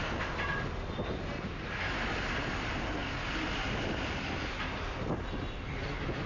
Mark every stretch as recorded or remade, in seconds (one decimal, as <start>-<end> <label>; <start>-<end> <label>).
0.0-6.3 recorded